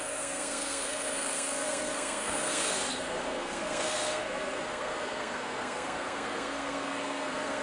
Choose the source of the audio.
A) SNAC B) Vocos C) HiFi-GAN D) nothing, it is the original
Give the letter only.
A